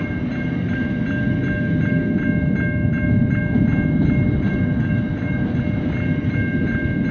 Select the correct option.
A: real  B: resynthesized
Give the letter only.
A